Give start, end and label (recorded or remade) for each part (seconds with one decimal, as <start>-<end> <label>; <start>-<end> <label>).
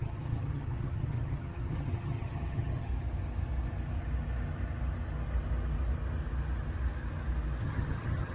0.0-2.9 remade; 2.9-7.6 recorded; 7.6-8.3 remade